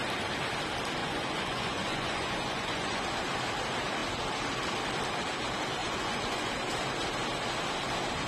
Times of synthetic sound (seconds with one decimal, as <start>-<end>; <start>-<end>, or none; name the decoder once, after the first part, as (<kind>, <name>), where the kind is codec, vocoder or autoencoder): 1.0-3.0 (vocoder, Vocos); 5.8-6.5